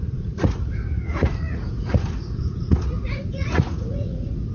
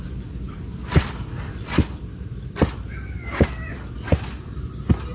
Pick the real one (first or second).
second